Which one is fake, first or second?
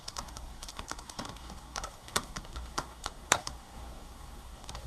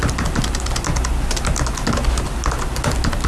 first